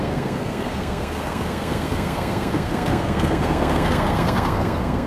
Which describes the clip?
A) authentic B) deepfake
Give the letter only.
B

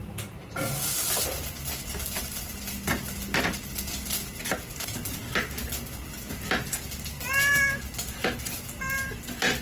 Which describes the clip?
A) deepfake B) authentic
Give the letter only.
B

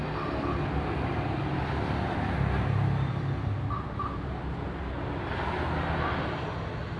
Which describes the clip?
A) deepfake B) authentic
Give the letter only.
B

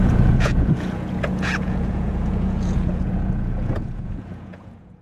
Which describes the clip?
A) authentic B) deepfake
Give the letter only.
B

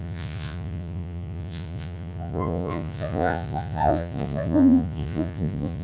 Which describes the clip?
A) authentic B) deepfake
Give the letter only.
B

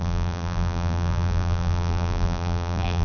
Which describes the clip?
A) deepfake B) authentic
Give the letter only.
A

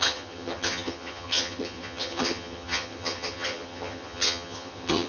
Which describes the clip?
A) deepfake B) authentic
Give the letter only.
A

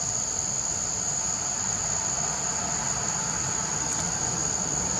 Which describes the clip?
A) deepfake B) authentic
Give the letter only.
B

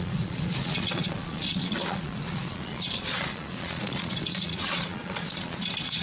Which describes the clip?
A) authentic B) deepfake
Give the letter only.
B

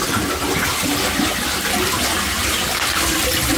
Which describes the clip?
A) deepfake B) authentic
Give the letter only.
B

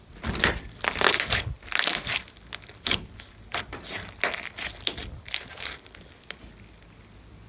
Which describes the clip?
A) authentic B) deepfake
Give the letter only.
A